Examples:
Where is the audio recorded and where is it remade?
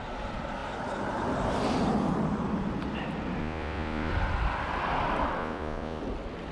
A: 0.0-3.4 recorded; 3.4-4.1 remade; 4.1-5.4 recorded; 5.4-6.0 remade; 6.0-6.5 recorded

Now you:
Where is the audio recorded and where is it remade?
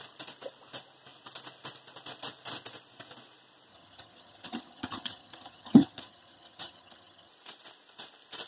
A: 0.0-3.7 recorded; 3.7-7.3 remade; 7.3-8.5 recorded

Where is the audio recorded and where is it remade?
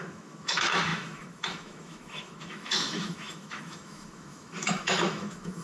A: 0.0-5.6 remade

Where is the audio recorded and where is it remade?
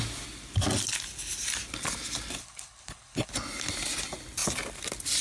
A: 0.0-2.4 recorded; 2.4-3.3 remade; 3.3-5.2 recorded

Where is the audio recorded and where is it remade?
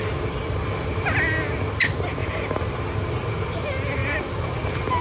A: 0.0-5.0 recorded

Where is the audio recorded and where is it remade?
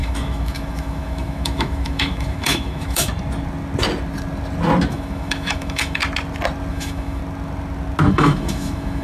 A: 0.0-3.1 remade; 3.1-4.9 recorded; 4.9-6.0 remade; 6.0-6.7 recorded; 6.7-7.2 remade; 7.2-8.1 recorded; 8.1-9.0 remade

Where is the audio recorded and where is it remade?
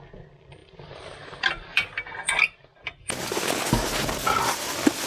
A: 0.0-0.6 recorded; 0.6-3.7 remade; 3.7-5.1 recorded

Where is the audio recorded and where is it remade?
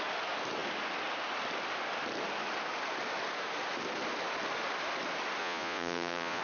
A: 0.0-5.4 recorded; 5.4-6.4 remade